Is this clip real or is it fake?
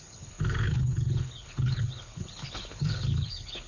fake